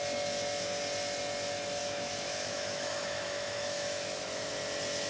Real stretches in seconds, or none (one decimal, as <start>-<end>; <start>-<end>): 0.0-1.8; 4.5-5.1